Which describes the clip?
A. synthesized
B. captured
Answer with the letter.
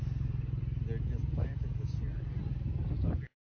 B